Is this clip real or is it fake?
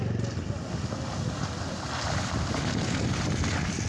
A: real